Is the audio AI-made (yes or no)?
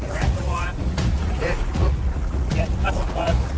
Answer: yes